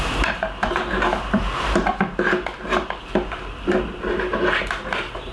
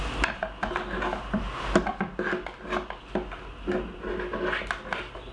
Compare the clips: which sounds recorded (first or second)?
second